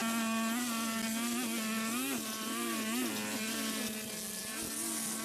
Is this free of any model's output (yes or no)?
yes